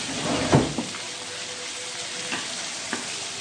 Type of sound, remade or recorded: recorded